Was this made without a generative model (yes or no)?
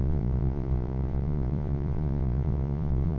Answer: no